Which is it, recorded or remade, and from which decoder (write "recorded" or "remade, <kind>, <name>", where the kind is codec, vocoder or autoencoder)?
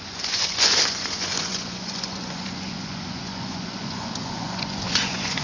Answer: remade, vocoder, Vocos